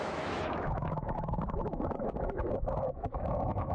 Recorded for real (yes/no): no